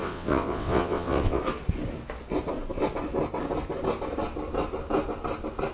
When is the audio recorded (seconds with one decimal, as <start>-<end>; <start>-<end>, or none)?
1.4-5.7